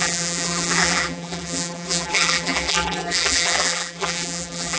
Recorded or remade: remade